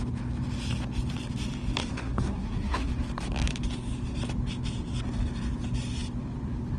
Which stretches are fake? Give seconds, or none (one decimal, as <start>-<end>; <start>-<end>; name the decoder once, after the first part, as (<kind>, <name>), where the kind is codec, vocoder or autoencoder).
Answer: 1.8-2.9 (codec, SNAC)